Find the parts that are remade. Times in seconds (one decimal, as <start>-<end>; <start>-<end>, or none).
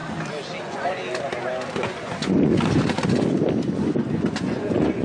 0.6-1.0; 1.8-2.5; 4.1-5.0